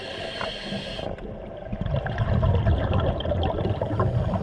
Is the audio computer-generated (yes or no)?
no